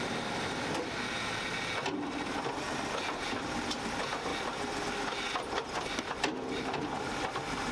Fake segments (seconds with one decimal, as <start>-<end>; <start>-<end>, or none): none